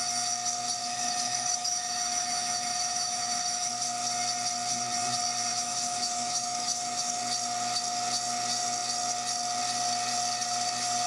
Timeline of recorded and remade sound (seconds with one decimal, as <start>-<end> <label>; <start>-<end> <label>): 0.0-0.8 recorded; 0.8-3.7 remade; 3.7-5.5 recorded; 5.5-7.2 remade; 7.2-11.1 recorded